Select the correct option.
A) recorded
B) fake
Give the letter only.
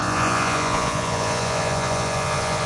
B